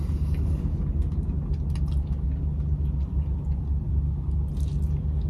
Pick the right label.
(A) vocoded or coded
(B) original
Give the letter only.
B